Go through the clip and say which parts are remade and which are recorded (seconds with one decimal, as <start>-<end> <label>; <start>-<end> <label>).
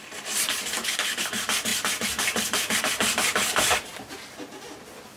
0.0-5.2 remade